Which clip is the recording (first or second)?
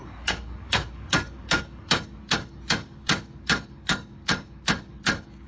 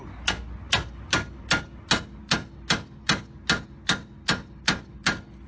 second